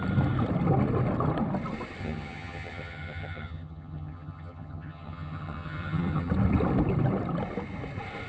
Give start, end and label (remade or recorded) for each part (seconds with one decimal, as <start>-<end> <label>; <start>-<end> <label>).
0.0-2.0 recorded; 2.0-6.3 remade; 6.3-8.3 recorded